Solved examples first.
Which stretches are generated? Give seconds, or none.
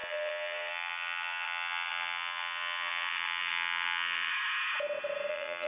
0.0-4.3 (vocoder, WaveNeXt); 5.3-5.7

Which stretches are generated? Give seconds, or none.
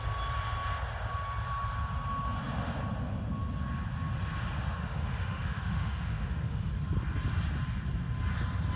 4.8-6.7 (autoencoder, DAC-VAE)